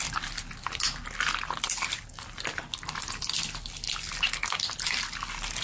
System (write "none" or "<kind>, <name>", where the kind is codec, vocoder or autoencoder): none